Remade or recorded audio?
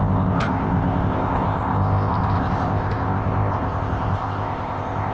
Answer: remade